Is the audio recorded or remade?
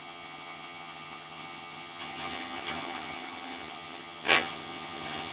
remade